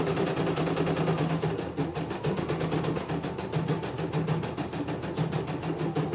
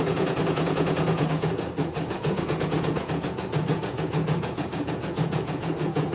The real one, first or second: first